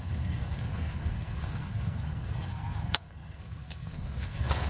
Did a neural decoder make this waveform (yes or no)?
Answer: yes